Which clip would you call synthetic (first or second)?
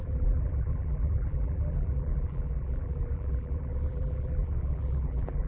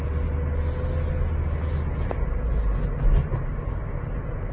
first